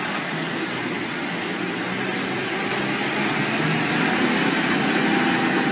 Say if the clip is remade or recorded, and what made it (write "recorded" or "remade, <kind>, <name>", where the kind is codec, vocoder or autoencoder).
recorded